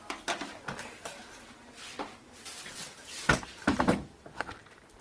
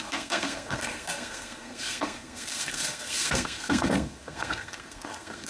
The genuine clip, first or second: first